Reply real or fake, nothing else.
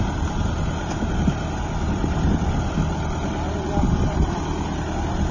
real